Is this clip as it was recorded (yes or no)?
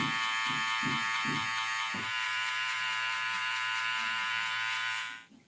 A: no